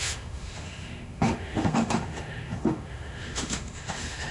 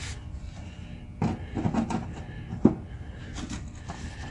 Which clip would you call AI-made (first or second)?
first